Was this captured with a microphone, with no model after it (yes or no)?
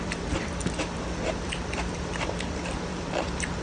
no